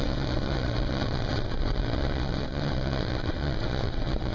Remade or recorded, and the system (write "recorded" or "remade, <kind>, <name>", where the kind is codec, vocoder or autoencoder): remade, vocoder, WaveNeXt